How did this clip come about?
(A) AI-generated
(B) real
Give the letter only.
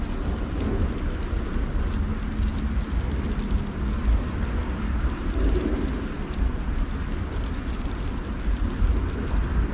B